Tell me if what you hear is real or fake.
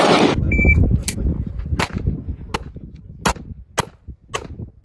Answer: real